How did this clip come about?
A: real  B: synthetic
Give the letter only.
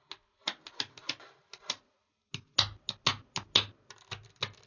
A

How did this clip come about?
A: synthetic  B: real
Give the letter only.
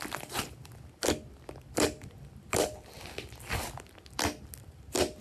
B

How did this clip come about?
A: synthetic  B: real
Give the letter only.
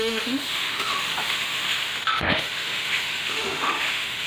A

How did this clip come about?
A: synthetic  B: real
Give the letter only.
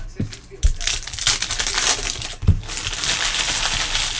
B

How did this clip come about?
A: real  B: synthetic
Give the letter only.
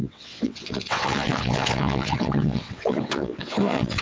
B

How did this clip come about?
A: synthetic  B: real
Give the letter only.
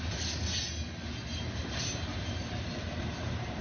B